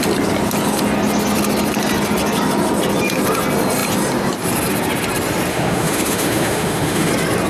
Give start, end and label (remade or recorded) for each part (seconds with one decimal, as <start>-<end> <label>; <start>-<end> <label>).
0.0-5.5 recorded; 5.5-7.1 remade; 7.1-7.5 recorded

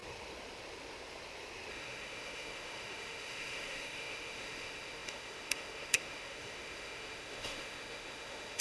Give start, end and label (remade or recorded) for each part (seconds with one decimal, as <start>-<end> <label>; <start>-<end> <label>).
0.0-1.7 recorded; 1.7-8.6 remade

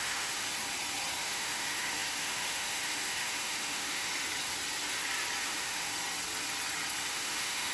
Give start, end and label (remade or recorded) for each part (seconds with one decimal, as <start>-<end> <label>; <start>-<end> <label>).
0.0-0.4 remade; 0.4-1.2 recorded; 1.2-4.1 remade; 4.1-5.4 recorded; 5.4-5.9 remade; 5.9-7.1 recorded; 7.1-7.7 remade

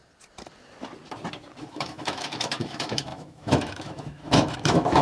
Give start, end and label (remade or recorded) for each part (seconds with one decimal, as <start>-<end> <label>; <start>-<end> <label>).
0.0-1.7 recorded; 1.7-5.0 remade

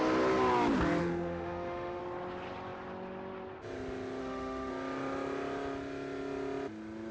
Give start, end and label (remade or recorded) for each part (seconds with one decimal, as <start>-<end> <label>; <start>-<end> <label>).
0.0-1.0 recorded; 1.0-2.0 remade; 2.0-4.2 recorded; 4.2-4.7 remade; 4.7-7.1 recorded

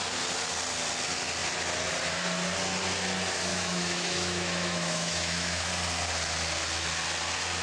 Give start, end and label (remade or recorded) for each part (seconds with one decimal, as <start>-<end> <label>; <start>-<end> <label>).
0.0-3.5 recorded; 3.5-5.7 remade; 5.7-7.6 recorded

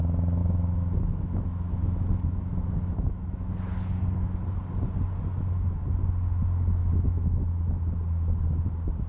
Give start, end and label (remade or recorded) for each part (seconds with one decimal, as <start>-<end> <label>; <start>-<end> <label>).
0.0-0.4 recorded; 0.4-3.5 remade; 3.5-6.8 recorded; 6.8-7.4 remade; 7.4-9.1 recorded

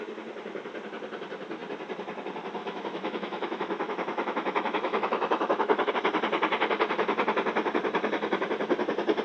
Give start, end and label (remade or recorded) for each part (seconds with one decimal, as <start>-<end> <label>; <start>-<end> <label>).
0.0-2.6 recorded; 2.6-5.9 remade; 5.9-9.2 recorded